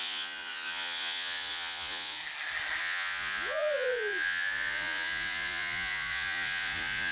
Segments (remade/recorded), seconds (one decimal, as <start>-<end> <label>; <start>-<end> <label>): 0.0-2.2 remade; 2.2-2.8 recorded; 2.8-7.1 remade